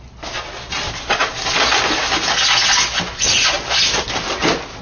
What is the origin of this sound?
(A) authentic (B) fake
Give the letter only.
A